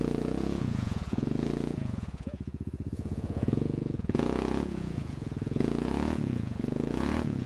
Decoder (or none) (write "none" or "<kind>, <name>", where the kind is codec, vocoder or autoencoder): vocoder, Vocos